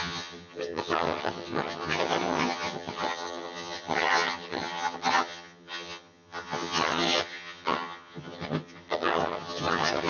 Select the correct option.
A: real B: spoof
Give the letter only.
B